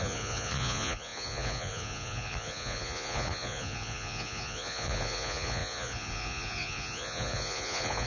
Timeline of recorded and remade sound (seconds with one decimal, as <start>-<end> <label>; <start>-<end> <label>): 0.0-8.1 remade